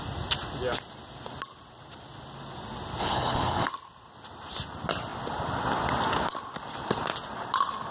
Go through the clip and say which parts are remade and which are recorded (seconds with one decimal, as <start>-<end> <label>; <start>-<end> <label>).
0.0-3.0 recorded; 3.0-3.7 remade; 3.7-7.9 recorded